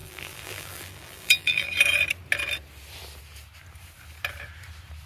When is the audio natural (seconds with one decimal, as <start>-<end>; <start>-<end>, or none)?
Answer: 1.7-5.1